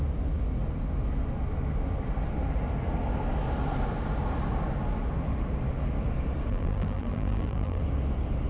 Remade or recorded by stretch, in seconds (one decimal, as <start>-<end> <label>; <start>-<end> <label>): 0.0-6.5 recorded; 6.5-7.8 remade; 7.8-8.5 recorded